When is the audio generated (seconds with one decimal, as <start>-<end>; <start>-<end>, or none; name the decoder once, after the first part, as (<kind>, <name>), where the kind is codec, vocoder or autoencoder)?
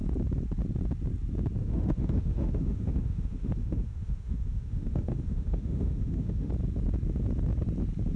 1.6-6.5 (autoencoder, DAC-VAE)